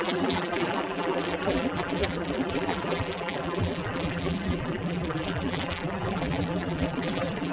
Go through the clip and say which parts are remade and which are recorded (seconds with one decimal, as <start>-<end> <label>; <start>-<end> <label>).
0.0-7.5 remade